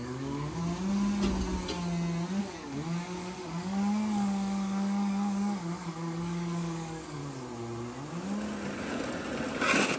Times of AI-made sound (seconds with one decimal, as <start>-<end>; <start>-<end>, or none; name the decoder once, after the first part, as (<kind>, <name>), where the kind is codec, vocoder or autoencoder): 0.0-0.6 (codec, DAC); 2.4-7.2